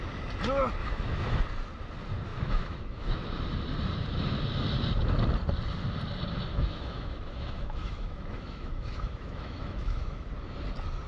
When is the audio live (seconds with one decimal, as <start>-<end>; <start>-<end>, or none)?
0.0-0.8; 1.4-2.3; 3.2-6.5; 10.3-11.1